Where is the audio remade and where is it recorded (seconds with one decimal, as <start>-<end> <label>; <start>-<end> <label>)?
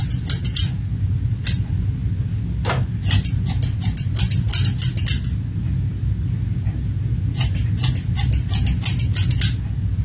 0.0-10.0 recorded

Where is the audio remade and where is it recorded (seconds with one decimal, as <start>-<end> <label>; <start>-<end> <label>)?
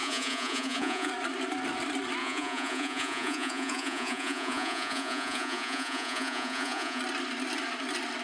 0.0-1.1 remade; 1.1-2.2 recorded; 2.2-7.0 remade; 7.0-8.2 recorded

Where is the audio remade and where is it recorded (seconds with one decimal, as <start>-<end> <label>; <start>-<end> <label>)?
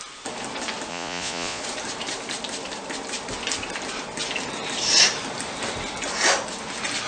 0.0-0.9 recorded; 0.9-1.6 remade; 1.6-7.1 recorded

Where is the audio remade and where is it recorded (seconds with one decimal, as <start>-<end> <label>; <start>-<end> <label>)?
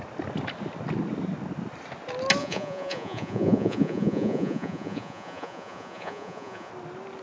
0.0-2.4 recorded; 2.4-6.7 remade; 6.7-7.2 recorded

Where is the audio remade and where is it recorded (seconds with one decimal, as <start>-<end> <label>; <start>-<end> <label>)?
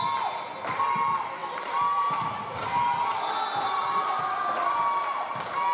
0.0-5.7 recorded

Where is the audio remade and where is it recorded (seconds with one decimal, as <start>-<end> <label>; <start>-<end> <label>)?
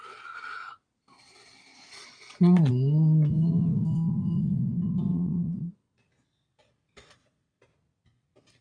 0.0-1.7 recorded; 1.7-2.7 remade; 2.7-5.1 recorded; 5.1-6.1 remade; 6.1-8.6 recorded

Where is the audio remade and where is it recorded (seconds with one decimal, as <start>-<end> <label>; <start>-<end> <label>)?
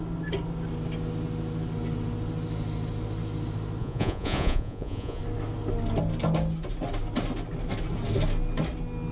0.0-3.8 recorded; 3.8-5.2 remade; 5.2-9.1 recorded